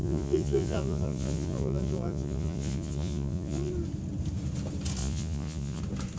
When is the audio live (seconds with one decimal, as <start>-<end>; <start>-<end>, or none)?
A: 3.7-5.0; 5.8-6.2

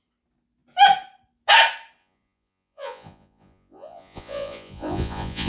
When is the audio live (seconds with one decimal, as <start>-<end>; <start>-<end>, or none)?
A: 0.0-2.0

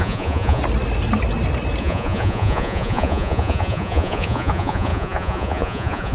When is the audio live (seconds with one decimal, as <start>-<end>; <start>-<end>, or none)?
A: 0.6-1.8

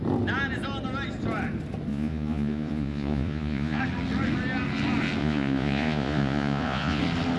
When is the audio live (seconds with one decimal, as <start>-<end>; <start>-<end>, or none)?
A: 0.0-1.9; 3.8-5.2; 7.0-7.4